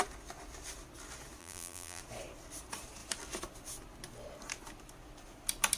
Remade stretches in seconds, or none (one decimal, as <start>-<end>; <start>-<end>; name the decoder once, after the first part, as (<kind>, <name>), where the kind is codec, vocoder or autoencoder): 1.4-2.0 (vocoder, BigVGAN v2)